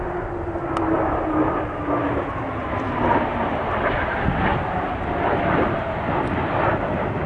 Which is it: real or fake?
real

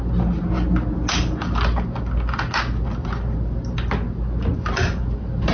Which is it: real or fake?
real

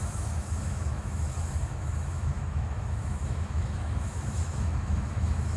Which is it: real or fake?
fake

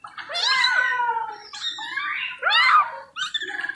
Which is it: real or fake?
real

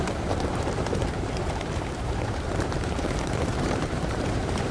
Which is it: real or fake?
fake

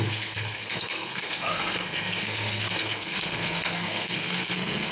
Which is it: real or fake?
fake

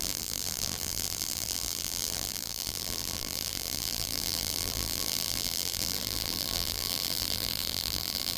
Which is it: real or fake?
fake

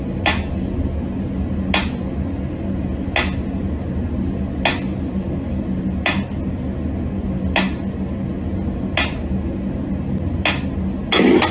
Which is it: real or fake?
real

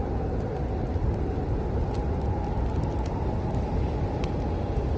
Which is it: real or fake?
real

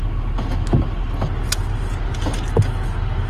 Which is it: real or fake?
real